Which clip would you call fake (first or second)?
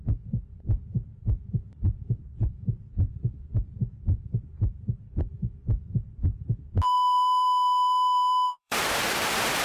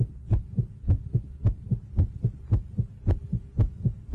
first